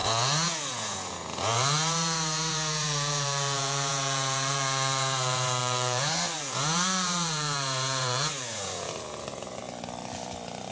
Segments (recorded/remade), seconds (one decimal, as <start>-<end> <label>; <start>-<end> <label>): 0.0-9.6 remade; 9.6-10.7 recorded